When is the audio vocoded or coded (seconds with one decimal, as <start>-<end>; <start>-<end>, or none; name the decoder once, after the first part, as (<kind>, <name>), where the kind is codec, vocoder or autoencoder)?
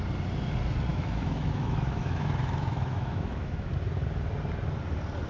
0.9-3.7 (autoencoder, DAC-VAE)